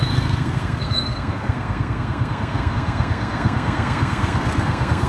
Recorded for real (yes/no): no